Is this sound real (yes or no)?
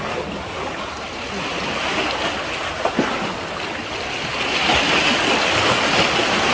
yes